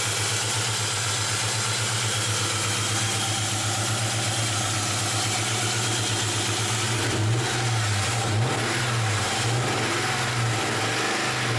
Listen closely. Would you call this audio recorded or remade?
recorded